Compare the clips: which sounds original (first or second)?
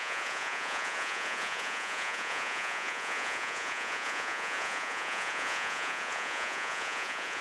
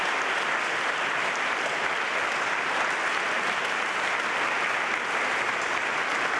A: second